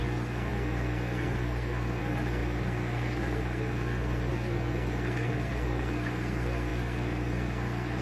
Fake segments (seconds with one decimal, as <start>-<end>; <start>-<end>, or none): 0.0-8.0